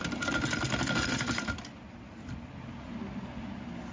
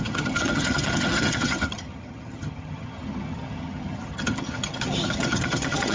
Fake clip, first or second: second